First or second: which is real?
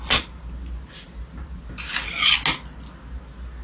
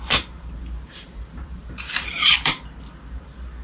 first